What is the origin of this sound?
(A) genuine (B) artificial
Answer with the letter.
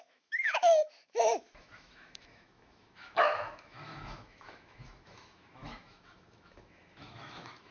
B